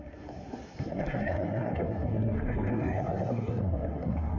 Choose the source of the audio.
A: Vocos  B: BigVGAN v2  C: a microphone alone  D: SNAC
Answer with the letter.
D